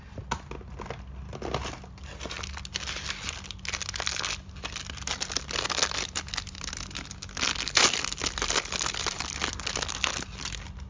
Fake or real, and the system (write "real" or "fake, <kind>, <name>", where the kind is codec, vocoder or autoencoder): real